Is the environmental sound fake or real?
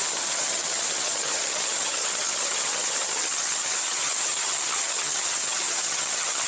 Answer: fake